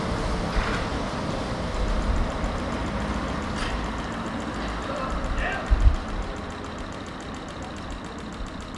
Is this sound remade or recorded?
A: recorded